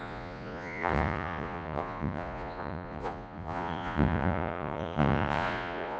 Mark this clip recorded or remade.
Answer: remade